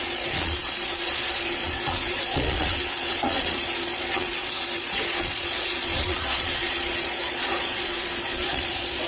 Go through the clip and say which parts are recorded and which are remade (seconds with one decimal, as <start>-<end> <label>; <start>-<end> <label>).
0.0-9.1 remade